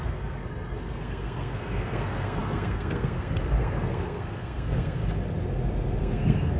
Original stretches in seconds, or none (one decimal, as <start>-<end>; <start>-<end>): 5.0-6.0

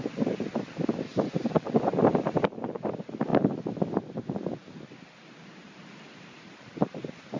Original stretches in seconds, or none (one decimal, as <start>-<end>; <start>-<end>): 0.0-7.4

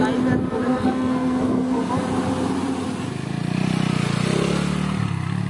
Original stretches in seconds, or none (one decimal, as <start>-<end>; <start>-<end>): 0.0-0.7; 1.9-5.5